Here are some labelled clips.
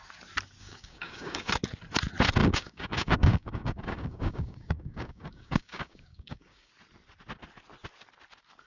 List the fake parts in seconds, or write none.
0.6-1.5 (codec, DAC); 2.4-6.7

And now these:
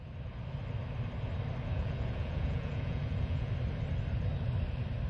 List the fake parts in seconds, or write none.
1.7-3.5 (vocoder, Vocos)